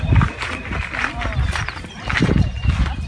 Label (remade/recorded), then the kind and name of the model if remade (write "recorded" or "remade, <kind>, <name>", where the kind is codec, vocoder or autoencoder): remade, vocoder, BigVGAN v2